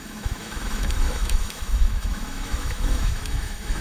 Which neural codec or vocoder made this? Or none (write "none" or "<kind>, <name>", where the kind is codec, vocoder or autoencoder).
autoencoder, DAC-VAE